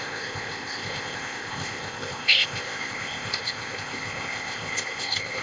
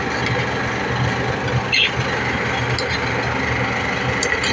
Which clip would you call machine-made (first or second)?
first